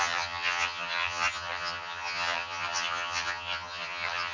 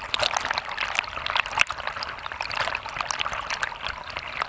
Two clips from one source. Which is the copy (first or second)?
first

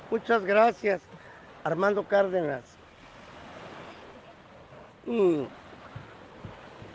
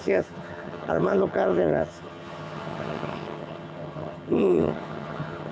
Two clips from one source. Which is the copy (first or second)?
second